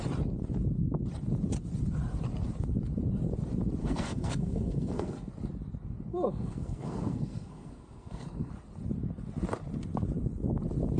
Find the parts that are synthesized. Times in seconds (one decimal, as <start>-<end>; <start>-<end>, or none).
3.8-5.3; 6.1-8.5